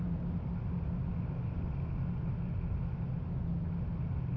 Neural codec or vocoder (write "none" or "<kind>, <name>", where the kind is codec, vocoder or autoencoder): none